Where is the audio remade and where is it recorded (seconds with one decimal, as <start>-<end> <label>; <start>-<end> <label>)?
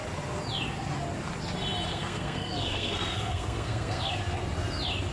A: 0.0-1.9 recorded; 1.9-4.1 remade; 4.1-5.1 recorded